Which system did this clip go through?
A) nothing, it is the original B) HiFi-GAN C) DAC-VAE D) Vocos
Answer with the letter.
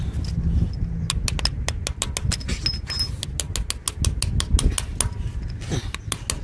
A